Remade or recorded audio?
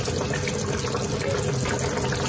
recorded